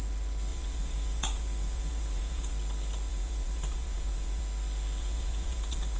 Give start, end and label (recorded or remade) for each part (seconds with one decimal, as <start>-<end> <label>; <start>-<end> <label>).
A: 0.0-0.5 recorded; 0.5-2.5 remade; 2.5-3.1 recorded; 3.1-4.4 remade; 4.4-5.0 recorded; 5.0-6.0 remade